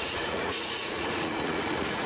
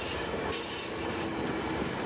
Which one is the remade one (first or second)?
first